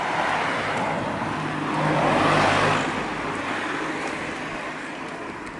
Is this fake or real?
real